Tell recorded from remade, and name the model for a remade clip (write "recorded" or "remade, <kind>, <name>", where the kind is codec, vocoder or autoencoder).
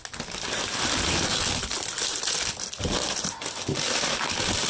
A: recorded